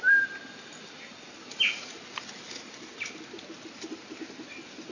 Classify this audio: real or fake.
real